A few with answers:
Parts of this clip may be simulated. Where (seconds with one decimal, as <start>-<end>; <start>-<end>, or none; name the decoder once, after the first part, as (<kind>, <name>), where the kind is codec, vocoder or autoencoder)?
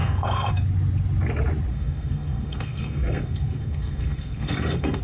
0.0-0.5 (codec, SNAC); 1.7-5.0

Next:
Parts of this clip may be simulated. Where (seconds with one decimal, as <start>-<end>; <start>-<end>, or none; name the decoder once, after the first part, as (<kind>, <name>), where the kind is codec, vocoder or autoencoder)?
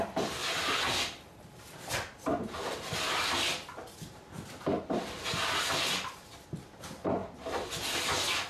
0.0-8.5 (vocoder, BigVGAN v2)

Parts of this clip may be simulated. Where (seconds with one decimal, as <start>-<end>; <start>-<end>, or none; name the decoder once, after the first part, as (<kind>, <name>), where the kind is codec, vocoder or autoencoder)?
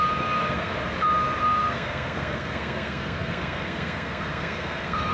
0.0-0.7 (codec, SNAC); 1.4-5.1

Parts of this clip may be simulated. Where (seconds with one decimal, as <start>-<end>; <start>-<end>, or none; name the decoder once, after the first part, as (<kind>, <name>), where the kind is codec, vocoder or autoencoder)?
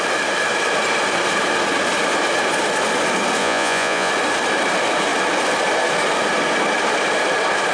3.4-4.1 (vocoder, Vocos)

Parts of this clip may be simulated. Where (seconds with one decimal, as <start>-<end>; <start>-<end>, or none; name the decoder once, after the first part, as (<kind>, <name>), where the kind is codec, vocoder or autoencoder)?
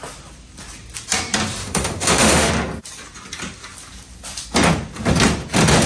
1.6-2.5 (autoencoder, DAC-VAE)